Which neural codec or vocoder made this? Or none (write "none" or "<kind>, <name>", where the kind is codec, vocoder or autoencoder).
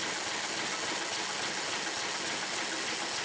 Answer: none